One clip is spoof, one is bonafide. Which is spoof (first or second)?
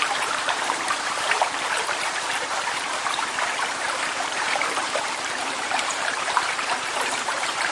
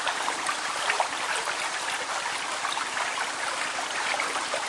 first